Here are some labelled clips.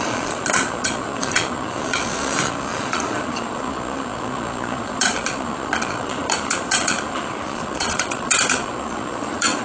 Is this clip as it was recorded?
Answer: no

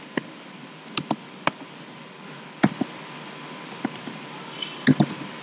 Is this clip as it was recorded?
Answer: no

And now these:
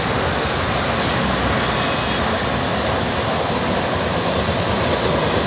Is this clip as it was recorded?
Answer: yes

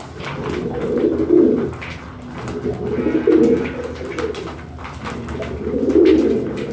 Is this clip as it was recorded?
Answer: yes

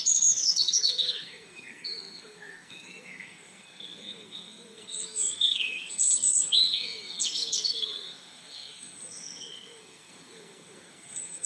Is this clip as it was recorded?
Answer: no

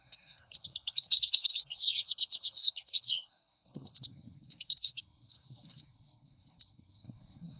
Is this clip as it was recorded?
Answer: no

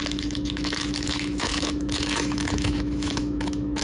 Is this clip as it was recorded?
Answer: no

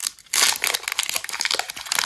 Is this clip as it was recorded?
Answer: yes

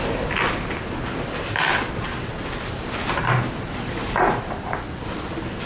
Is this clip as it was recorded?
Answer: yes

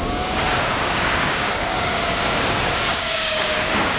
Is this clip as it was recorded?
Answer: no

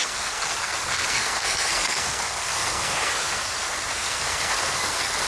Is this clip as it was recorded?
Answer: no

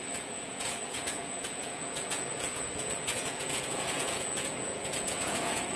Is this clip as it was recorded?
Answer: no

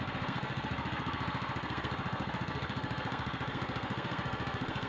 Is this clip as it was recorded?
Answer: no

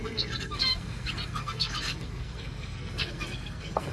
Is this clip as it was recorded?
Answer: no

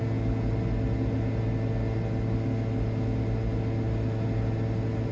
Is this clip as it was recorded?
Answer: yes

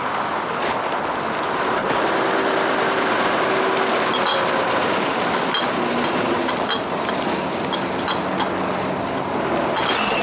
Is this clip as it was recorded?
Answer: yes